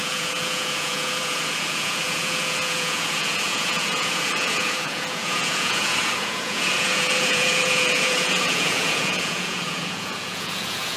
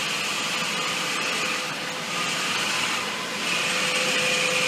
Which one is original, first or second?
second